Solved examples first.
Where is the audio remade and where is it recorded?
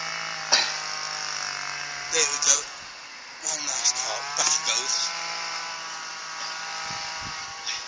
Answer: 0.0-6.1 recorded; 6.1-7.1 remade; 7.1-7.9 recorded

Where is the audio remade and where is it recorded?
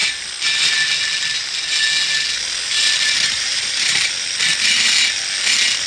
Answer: 0.0-2.7 recorded; 2.7-4.1 remade; 4.1-5.9 recorded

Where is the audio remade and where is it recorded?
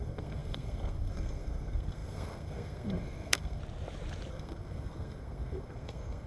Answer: 0.0-3.6 remade; 3.6-4.3 recorded; 4.3-6.3 remade